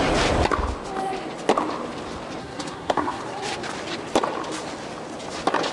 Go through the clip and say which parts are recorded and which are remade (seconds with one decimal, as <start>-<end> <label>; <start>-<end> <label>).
0.0-2.4 recorded; 2.4-3.2 remade; 3.2-5.7 recorded